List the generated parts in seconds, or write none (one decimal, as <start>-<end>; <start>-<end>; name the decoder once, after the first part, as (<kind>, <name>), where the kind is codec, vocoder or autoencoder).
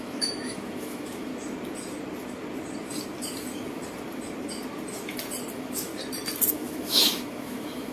0.0-1.3 (autoencoder, DAC-VAE); 5.5-5.9; 6.5-7.9